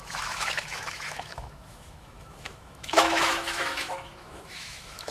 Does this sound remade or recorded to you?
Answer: remade